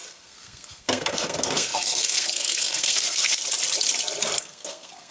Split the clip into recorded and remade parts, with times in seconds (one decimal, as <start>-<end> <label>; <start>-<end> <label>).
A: 0.0-3.4 remade; 3.4-4.4 recorded; 4.4-5.1 remade